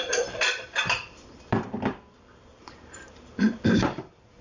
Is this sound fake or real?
fake